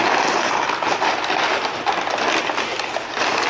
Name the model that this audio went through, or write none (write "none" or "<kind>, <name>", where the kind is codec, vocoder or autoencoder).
none